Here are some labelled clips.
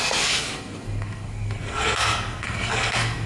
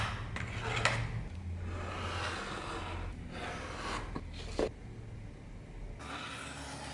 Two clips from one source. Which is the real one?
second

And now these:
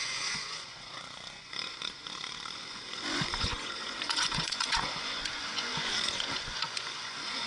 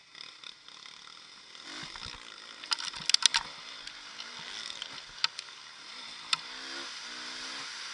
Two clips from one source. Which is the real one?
second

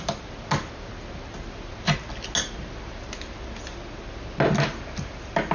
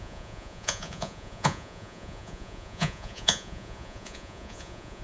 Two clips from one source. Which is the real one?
first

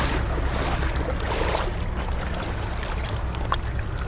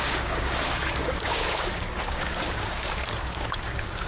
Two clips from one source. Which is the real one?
first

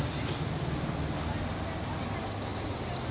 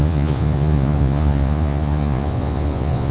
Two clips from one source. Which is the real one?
first